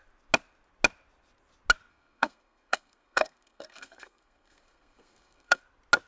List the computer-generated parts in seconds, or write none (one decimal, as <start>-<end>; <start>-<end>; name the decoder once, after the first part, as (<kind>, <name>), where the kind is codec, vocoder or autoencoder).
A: 1.9-5.6 (codec, SNAC)